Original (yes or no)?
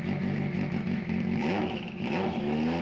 no